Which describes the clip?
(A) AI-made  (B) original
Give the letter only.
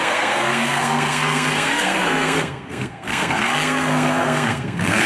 A